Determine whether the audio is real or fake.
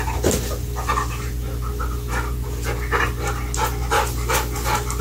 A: real